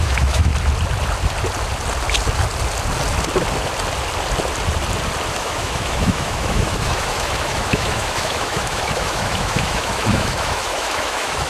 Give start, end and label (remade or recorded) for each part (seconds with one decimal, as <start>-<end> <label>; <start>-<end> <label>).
0.0-0.5 remade; 0.5-5.3 recorded; 5.3-11.5 remade